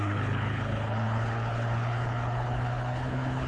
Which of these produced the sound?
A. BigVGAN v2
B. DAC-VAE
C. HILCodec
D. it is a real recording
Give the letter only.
C